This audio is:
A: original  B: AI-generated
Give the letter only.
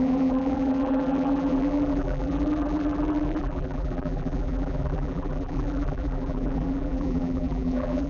B